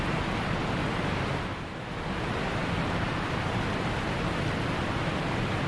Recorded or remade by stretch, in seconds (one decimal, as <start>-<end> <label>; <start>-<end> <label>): 0.0-5.7 recorded